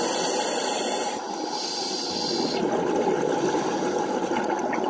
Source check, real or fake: real